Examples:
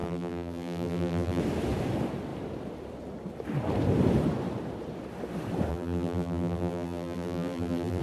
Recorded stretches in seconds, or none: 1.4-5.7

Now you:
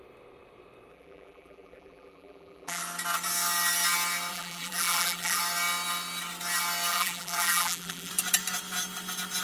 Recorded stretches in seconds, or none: 0.0-0.9; 2.8-4.3; 5.4-6.9; 8.1-9.4

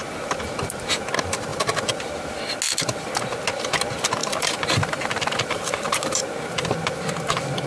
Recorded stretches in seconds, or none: 0.0-4.2; 6.3-7.7

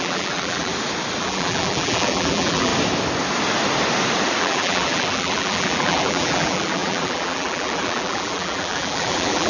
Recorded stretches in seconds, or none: 0.7-1.2; 2.7-4.4

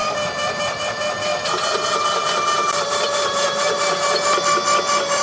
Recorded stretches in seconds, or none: 0.8-1.3; 4.4-5.2